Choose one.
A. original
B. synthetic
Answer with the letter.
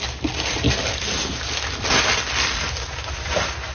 A